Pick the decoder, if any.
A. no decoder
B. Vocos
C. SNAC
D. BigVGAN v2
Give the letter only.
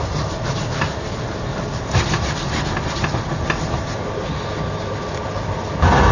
A